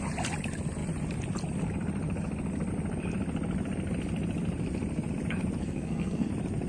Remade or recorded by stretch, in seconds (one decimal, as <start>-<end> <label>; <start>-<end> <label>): 0.0-5.6 recorded; 5.6-6.3 remade; 6.3-6.7 recorded